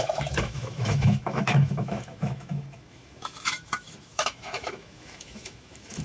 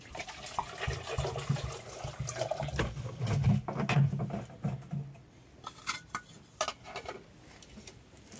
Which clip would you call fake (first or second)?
first